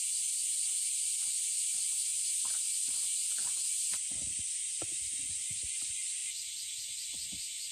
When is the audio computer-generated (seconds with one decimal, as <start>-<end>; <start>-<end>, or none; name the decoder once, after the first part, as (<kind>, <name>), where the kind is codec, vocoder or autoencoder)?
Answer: none